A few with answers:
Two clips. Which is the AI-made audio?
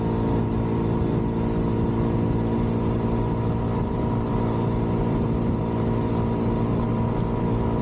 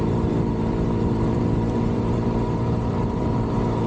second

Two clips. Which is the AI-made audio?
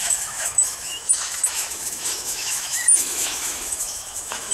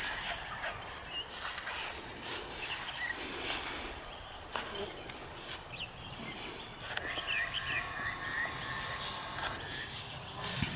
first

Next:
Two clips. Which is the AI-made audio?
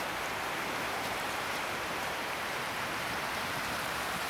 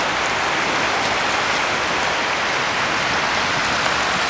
first